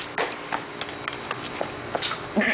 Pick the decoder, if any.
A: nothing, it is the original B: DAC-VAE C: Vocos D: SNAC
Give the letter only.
A